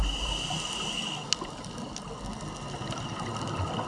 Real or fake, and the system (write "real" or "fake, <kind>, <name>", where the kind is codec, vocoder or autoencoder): real